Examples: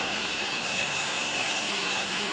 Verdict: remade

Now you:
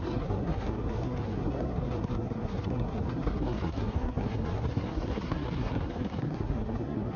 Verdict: remade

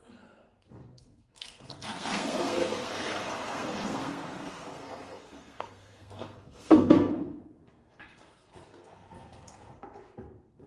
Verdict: remade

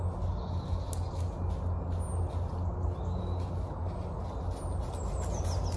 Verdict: recorded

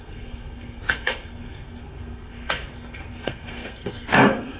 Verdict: remade